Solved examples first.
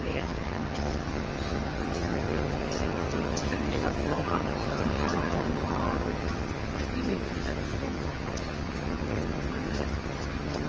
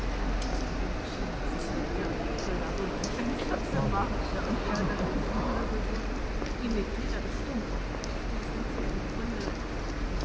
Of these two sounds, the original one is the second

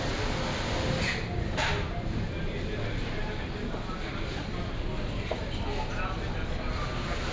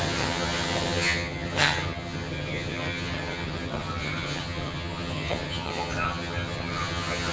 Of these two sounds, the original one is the first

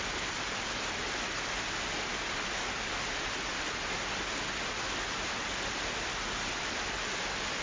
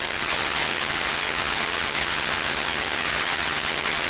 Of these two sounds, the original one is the first